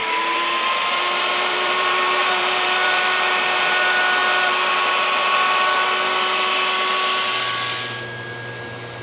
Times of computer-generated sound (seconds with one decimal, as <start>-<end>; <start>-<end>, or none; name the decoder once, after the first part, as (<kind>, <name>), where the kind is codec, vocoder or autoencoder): 0.0-3.4 (vocoder, BigVGAN v2)